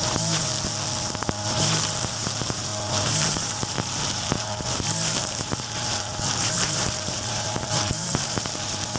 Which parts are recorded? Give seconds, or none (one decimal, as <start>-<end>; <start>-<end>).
0.5-1.0